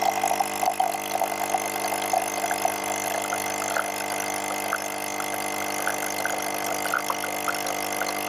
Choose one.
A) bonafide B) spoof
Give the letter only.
A